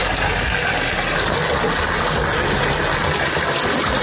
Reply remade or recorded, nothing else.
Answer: recorded